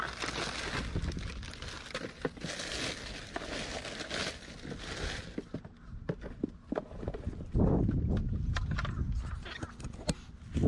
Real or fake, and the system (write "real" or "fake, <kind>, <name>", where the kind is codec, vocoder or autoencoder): real